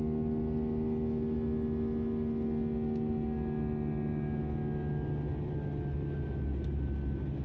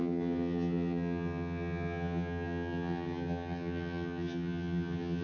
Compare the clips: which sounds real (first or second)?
first